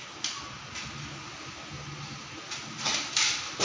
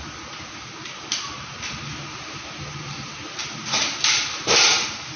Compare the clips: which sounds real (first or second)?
first